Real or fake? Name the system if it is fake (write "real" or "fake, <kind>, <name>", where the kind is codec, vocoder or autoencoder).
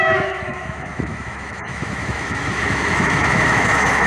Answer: fake, autoencoder, DAC-VAE